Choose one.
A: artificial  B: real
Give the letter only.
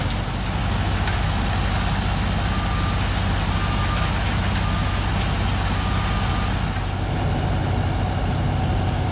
B